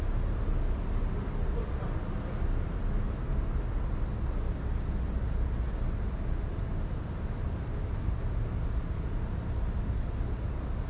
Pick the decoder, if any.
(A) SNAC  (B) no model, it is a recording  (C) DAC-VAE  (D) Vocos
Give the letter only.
B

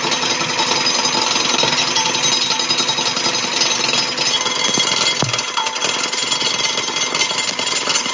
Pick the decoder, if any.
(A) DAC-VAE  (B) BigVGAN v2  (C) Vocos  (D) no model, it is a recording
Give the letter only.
D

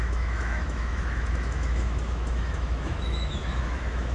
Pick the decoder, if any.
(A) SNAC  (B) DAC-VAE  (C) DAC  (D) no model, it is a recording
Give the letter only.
B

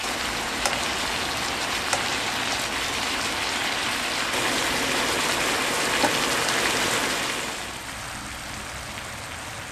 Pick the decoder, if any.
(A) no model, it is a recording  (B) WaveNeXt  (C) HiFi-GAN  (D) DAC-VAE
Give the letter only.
A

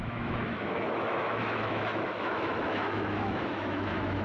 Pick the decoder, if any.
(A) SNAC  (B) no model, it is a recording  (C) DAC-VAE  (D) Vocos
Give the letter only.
C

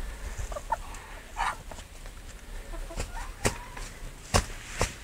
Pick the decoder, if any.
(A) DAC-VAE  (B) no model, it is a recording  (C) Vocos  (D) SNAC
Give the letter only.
B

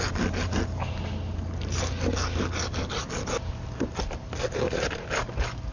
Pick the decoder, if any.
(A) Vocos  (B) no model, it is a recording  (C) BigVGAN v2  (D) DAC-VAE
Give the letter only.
B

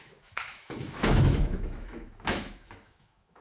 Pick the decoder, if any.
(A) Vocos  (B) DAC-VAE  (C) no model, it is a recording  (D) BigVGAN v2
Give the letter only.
B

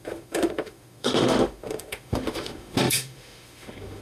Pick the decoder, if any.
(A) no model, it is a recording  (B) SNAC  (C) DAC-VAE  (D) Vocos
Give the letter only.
C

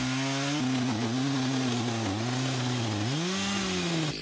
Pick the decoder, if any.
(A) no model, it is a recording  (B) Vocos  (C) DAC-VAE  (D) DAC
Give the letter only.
A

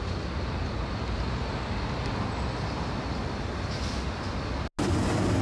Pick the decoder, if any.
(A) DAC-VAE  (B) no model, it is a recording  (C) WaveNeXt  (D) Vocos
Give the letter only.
B